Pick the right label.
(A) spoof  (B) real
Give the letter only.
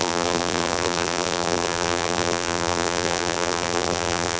A